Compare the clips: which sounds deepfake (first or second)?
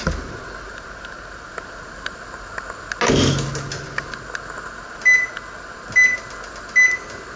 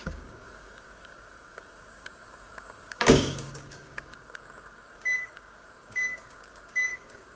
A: second